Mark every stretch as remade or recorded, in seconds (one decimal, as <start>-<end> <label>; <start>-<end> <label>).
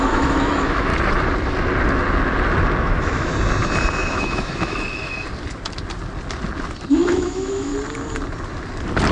0.0-0.9 remade; 0.9-2.8 recorded; 2.8-3.3 remade; 3.3-4.1 recorded; 4.1-5.1 remade; 5.1-6.9 recorded; 6.9-7.7 remade; 7.7-9.1 recorded